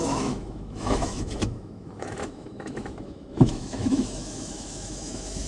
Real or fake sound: fake